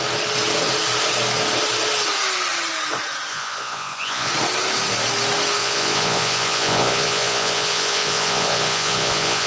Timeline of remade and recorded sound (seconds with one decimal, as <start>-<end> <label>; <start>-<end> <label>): 0.0-3.3 recorded; 3.3-4.3 remade; 4.3-5.6 recorded; 5.6-9.5 remade

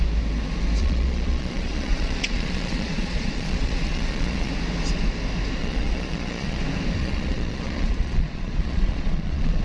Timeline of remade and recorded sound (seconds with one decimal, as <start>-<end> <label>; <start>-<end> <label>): 0.0-0.8 recorded; 0.8-4.5 remade; 4.5-5.6 recorded; 5.6-6.6 remade; 6.6-7.0 recorded; 7.0-9.6 remade

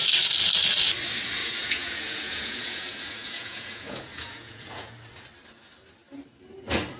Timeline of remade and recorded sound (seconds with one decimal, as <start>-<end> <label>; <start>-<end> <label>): 0.0-1.4 recorded; 1.4-4.9 remade; 4.9-7.0 recorded

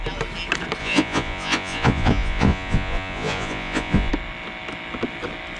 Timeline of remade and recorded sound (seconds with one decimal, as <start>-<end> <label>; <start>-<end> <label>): 0.0-0.8 recorded; 0.8-4.1 remade; 4.1-5.6 recorded

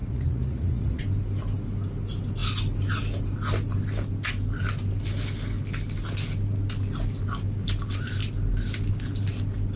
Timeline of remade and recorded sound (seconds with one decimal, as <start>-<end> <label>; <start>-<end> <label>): 0.0-1.0 remade; 1.0-9.8 recorded

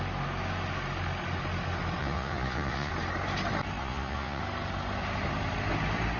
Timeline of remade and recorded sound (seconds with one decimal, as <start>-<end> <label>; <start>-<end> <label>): 0.0-2.0 recorded; 2.0-2.9 remade; 2.9-3.8 recorded; 3.8-4.4 remade; 4.4-6.2 recorded

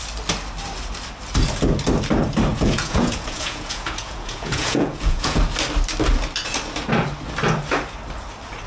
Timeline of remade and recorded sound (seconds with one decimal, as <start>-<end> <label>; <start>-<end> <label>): 0.0-2.5 recorded; 2.5-5.4 remade; 5.4-8.7 recorded